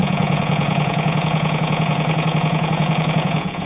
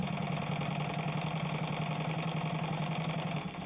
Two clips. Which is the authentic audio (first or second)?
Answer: second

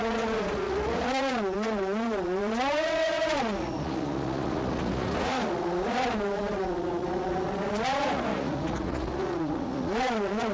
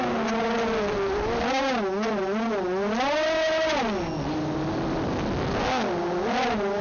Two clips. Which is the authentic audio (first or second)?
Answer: second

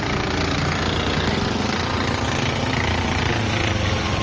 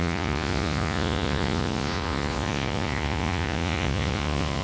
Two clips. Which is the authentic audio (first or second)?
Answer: first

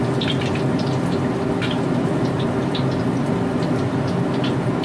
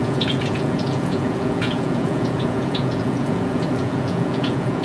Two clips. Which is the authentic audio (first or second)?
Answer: first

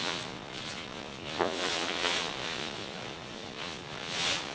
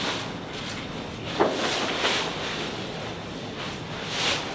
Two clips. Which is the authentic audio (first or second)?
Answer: second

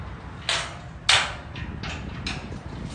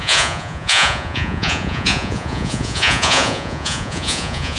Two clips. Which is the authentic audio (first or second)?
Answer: first